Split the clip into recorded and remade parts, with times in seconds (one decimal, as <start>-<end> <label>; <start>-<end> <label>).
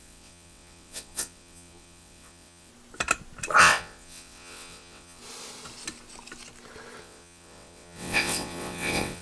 0.0-2.7 remade; 2.7-3.6 recorded; 3.6-5.2 remade; 5.2-7.0 recorded; 7.0-9.2 remade